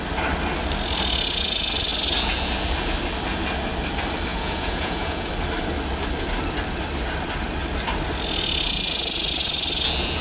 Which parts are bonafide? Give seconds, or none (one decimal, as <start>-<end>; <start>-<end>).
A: 0.0-4.3; 5.3-10.2